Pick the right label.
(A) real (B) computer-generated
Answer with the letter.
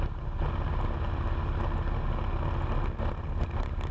A